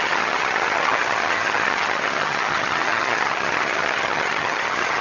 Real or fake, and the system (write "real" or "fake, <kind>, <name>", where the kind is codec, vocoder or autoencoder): fake, vocoder, HiFi-GAN